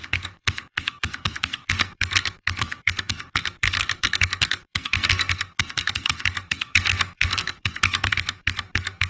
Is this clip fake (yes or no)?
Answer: yes